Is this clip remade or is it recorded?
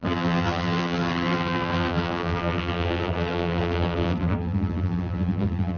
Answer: remade